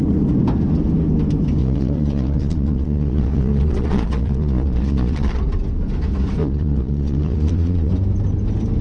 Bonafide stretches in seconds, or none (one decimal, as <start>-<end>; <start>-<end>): 0.0-1.6; 5.4-6.4; 7.9-8.8